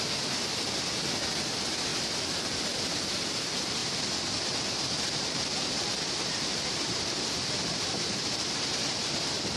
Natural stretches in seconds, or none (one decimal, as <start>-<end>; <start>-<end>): 0.0-3.8; 8.5-9.6